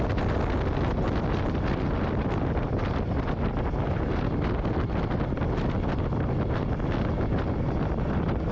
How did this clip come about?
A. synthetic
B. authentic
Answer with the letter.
B